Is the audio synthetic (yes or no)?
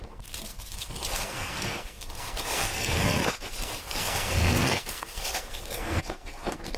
yes